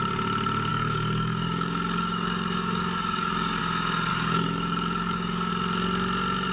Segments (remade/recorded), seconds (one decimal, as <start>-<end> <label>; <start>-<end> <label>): 0.0-0.7 recorded; 0.7-3.6 remade; 3.6-4.1 recorded; 4.1-5.5 remade; 5.5-6.5 recorded

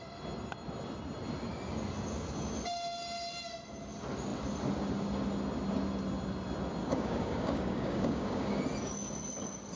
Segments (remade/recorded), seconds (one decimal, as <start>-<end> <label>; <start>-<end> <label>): 0.0-6.8 recorded; 6.8-8.6 remade; 8.6-9.8 recorded

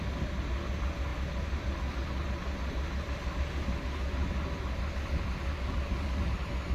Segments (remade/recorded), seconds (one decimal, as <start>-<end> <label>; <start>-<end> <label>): 0.0-5.5 recorded; 5.5-6.3 remade; 6.3-6.7 recorded

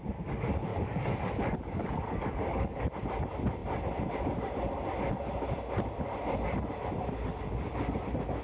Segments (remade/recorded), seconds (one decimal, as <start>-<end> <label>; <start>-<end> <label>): 0.0-0.7 recorded; 0.7-2.9 remade; 2.9-8.4 recorded

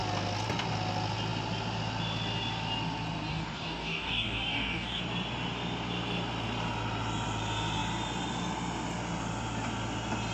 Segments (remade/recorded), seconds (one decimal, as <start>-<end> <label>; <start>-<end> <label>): 0.0-3.3 recorded; 3.3-5.0 remade; 5.0-10.3 recorded

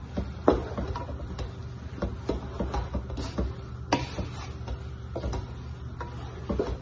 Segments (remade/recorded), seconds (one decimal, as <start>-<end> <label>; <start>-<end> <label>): 0.0-6.8 recorded

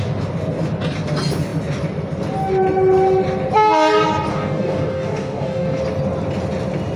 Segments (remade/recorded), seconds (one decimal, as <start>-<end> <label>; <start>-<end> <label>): 0.0-4.3 recorded; 4.3-5.8 remade; 5.8-7.0 recorded